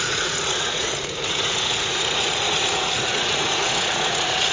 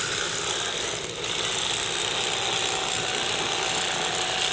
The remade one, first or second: first